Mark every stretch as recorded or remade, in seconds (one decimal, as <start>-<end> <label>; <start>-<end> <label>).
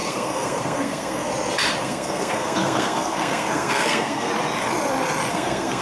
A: 0.0-1.3 remade; 1.3-1.8 recorded; 1.8-4.3 remade; 4.3-5.3 recorded; 5.3-5.8 remade